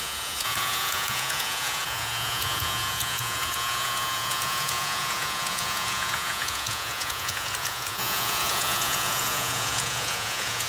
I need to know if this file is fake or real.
fake